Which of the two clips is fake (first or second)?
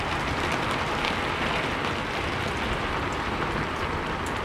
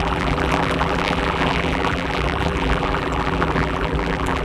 second